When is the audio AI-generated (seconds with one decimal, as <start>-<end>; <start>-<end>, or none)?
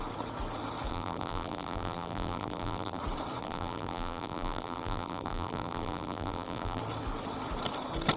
0.9-3.0; 3.4-6.8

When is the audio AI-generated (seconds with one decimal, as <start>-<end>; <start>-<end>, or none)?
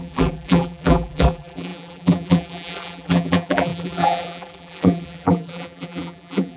0.0-6.6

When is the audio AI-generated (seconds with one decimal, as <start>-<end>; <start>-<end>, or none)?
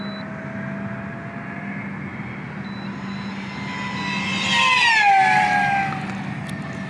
none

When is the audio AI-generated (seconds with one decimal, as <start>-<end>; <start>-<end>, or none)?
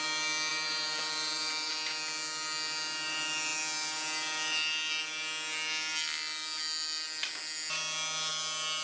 0.5-1.7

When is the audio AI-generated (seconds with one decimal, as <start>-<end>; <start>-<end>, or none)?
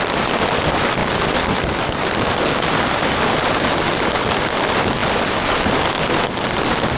none